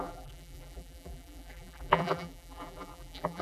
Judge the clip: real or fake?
fake